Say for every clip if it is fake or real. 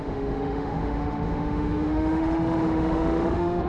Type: fake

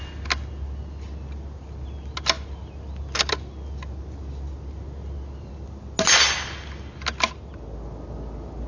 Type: real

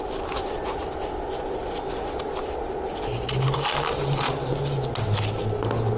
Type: real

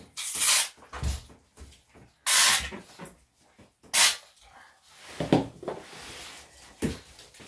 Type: real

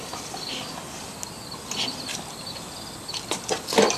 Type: real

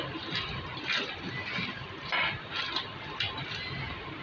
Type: real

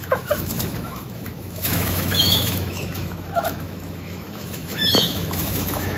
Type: fake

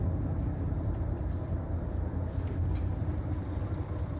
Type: real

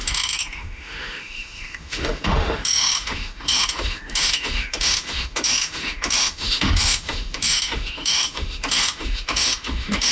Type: fake